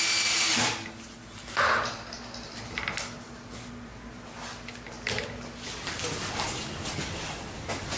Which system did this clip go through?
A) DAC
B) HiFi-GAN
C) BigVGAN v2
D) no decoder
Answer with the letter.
D